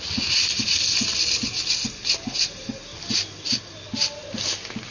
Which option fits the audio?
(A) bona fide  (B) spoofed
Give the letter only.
A